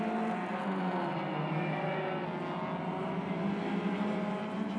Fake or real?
real